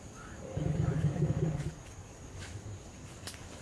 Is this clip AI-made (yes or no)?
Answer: yes